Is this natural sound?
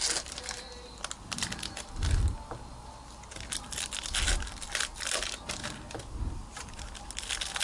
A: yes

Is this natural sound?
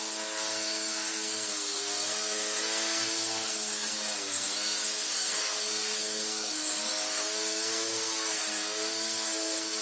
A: no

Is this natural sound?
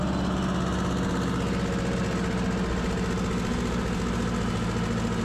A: yes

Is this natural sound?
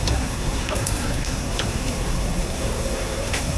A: no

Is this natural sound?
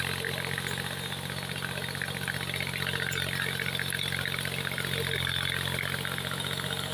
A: yes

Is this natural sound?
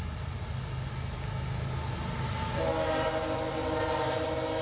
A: yes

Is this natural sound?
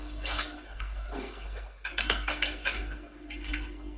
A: no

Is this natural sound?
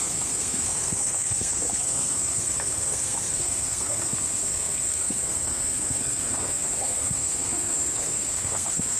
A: no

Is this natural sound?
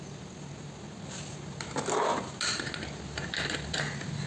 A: yes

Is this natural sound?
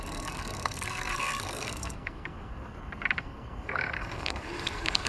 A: no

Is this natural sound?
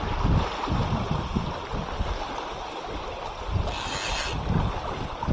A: yes